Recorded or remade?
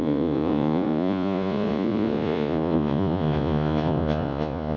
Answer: remade